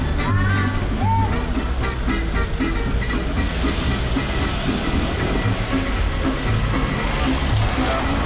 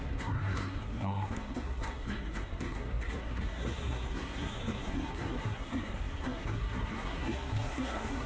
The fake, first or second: second